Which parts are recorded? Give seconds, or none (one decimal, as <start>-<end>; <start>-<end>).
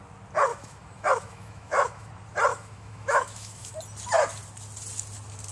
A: 0.0-0.5; 2.1-2.5; 3.7-5.5